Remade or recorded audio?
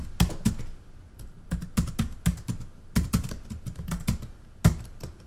recorded